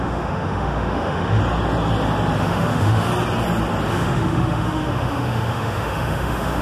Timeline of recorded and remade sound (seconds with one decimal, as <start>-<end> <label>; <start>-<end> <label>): 0.0-1.4 remade; 1.4-2.4 recorded; 2.4-3.1 remade; 3.1-3.9 recorded; 3.9-6.6 remade